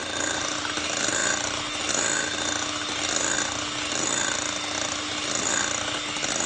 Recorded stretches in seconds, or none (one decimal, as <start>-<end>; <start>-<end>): 0.0-6.5